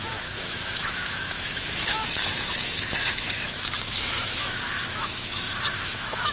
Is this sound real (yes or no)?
no